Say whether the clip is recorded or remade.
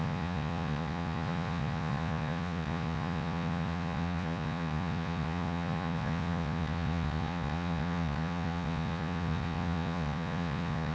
remade